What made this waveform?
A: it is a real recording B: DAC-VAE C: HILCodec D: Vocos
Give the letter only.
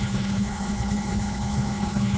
C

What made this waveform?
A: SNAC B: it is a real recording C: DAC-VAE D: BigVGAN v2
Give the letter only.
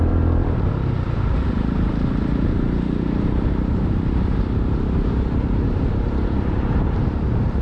D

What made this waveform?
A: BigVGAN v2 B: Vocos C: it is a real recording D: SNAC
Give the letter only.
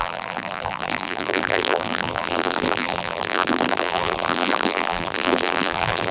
A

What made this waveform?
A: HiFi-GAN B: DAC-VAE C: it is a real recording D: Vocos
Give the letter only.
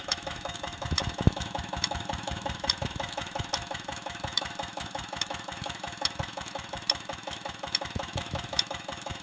B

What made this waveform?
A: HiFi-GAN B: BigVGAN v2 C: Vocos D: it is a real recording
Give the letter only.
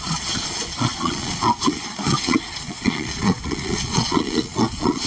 C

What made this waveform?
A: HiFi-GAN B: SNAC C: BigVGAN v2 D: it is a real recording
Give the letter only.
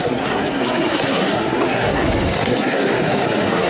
B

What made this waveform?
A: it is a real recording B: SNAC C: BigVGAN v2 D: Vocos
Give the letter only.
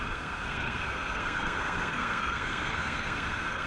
B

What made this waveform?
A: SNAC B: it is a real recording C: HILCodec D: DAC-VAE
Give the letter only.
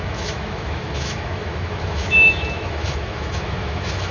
D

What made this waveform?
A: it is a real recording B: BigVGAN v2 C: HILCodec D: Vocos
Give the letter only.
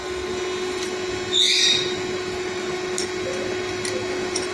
A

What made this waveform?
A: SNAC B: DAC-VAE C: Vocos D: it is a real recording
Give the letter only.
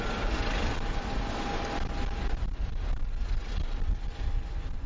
D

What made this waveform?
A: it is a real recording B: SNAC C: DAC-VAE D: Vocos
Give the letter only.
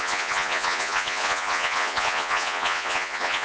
D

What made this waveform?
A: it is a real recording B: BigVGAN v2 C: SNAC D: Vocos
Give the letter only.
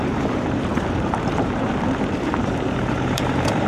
B